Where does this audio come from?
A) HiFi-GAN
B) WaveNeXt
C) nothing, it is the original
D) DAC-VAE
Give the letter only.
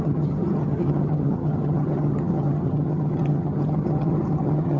A